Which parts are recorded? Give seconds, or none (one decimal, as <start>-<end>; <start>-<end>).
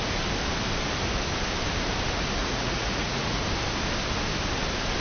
0.0-2.4; 3.4-5.0